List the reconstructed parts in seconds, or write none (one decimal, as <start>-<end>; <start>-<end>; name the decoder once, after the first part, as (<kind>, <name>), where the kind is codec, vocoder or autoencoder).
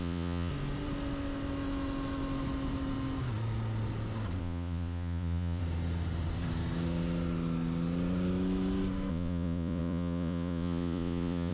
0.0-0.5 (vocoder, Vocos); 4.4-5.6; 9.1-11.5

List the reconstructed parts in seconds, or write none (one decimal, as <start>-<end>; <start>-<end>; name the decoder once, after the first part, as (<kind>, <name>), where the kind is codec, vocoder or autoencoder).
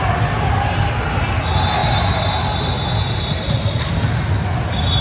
none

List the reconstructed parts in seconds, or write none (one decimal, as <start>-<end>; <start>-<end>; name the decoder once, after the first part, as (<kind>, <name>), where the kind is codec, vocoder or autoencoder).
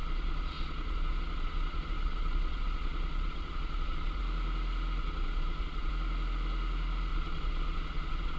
0.0-4.2 (vocoder, Vocos); 5.0-5.9; 7.1-8.4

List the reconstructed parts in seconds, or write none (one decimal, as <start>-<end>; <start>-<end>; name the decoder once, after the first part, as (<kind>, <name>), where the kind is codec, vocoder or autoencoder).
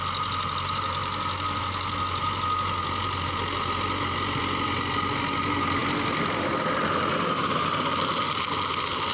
none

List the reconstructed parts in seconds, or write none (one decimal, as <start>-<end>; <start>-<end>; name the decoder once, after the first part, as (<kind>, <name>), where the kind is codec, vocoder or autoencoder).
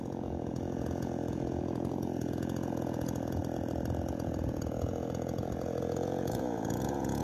0.0-3.4 (vocoder, Vocos); 4.1-7.2